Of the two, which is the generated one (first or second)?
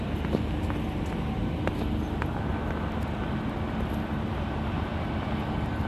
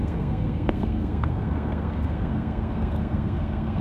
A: second